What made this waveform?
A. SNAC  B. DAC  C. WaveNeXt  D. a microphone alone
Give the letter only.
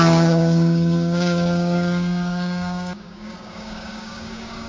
B